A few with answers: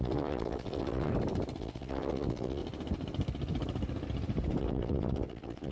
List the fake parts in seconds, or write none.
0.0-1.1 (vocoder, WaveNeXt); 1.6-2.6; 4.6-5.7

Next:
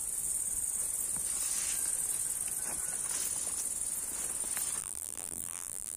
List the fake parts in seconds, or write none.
4.8-6.0 (vocoder, BigVGAN v2)